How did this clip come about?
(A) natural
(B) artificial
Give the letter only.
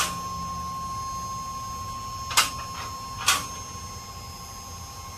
A